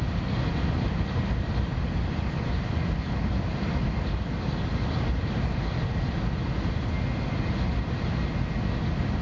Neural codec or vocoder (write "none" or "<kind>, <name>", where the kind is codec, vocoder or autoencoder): none